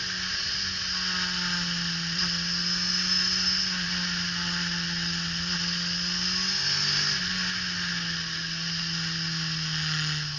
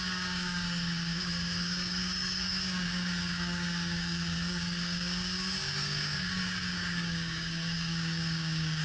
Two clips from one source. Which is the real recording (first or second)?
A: first